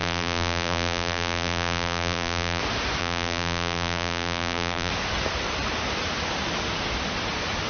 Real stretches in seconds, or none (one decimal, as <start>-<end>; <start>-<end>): 2.6-3.0; 4.9-7.7